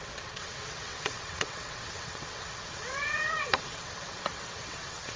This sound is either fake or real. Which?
fake